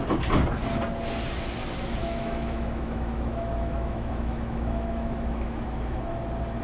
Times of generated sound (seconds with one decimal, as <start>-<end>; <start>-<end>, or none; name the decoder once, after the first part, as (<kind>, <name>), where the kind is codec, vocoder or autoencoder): 2.0-6.0 (autoencoder, DAC-VAE)